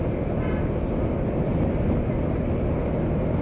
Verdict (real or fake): real